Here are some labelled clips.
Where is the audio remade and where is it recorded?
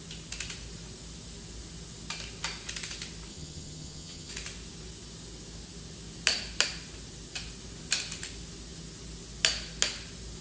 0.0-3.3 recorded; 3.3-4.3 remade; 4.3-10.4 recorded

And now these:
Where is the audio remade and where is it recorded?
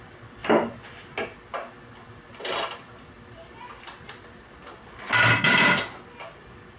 0.0-6.8 recorded